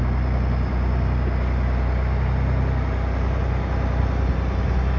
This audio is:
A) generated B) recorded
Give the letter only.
B